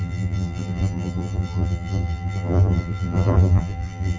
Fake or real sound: fake